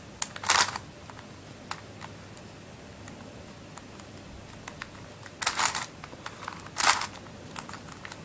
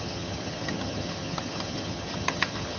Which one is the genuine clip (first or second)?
first